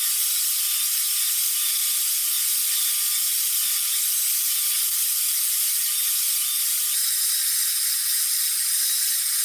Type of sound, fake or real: real